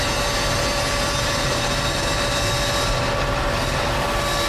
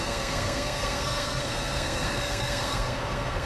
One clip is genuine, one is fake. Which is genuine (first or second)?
first